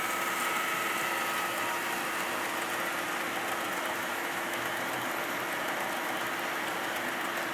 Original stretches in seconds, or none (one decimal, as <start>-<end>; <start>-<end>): 0.0-4.0; 4.7-7.5